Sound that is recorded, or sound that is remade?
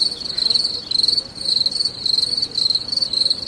recorded